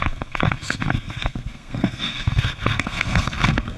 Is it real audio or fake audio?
fake